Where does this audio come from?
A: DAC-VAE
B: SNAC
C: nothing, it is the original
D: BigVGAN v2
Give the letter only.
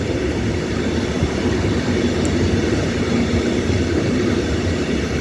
D